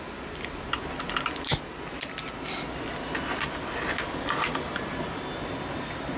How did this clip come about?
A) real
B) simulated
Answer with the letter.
A